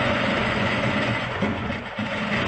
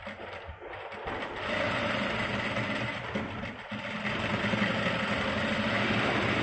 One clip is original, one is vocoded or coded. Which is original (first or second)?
second